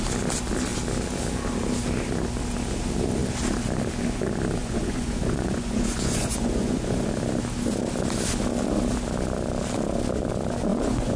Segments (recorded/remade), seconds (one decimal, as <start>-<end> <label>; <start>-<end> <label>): 0.0-4.6 recorded; 4.6-7.1 remade; 7.1-10.7 recorded; 10.7-11.2 remade